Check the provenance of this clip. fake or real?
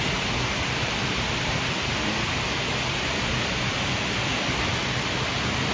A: real